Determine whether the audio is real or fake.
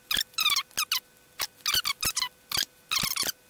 real